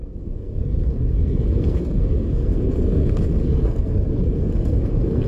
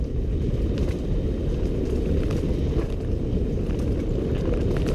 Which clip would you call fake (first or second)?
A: first